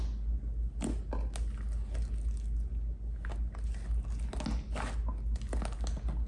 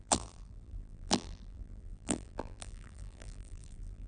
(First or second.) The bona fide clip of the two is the first